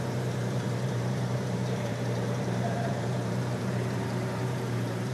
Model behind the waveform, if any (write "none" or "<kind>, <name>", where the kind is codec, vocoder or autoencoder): vocoder, BigVGAN v2